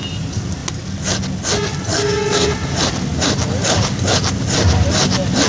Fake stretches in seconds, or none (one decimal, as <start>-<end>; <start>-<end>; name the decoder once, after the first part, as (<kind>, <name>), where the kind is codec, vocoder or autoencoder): 1.9-2.5 (codec, SNAC)